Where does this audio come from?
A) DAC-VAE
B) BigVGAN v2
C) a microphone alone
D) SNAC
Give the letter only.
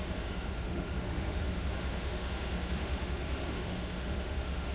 A